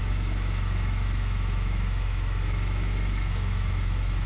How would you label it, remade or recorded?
remade